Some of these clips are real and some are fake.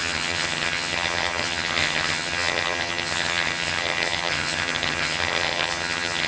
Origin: fake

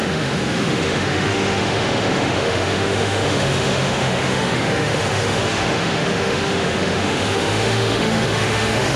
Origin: fake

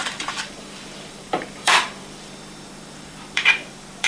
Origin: fake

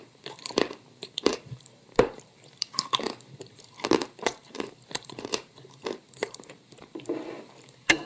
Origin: fake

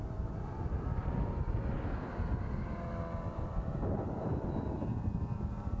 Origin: fake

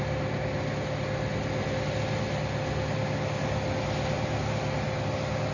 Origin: real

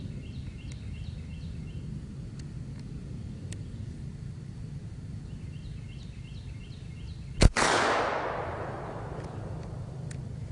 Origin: real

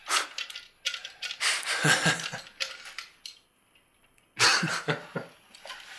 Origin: real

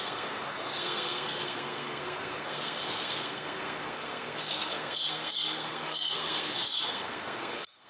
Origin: fake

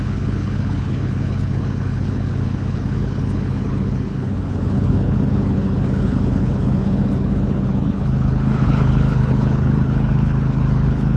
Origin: fake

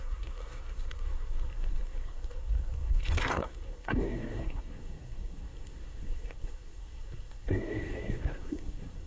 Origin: fake